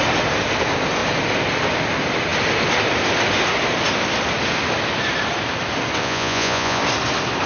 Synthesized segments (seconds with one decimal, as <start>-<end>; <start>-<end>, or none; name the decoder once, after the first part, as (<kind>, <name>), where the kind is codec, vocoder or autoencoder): 6.0-6.8 (vocoder, Vocos)